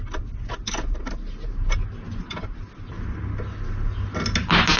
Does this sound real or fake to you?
real